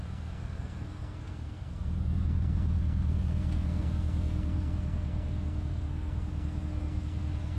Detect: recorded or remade remade